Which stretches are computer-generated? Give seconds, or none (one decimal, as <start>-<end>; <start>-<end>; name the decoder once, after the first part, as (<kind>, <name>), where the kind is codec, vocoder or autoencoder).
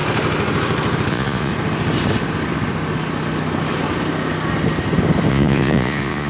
1.1-1.5 (vocoder, Vocos); 5.3-6.3